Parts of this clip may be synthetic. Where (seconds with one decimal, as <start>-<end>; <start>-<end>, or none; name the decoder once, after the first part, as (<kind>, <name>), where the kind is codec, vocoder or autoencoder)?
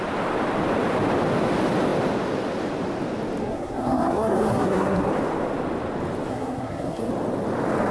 3.4-5.1 (codec, SNAC); 6.3-7.1